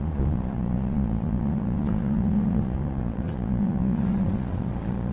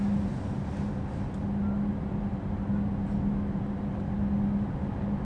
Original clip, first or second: second